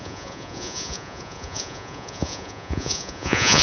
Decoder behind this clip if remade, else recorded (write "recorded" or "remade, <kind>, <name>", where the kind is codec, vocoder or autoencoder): remade, vocoder, Vocos